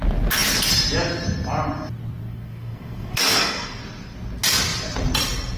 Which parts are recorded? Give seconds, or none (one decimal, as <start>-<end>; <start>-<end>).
0.0-2.2; 3.8-5.6